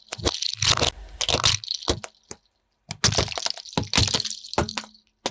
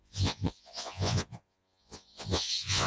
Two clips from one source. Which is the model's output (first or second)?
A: second